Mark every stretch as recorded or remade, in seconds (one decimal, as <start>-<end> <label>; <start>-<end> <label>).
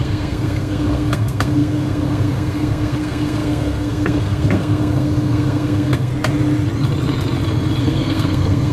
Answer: 0.0-6.1 remade; 6.1-7.8 recorded; 7.8-8.7 remade